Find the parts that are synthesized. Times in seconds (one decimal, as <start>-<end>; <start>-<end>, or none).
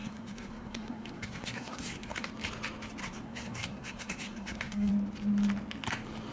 0.0-2.3; 3.0-4.9